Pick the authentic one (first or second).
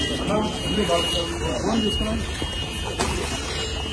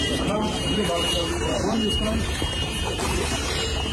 first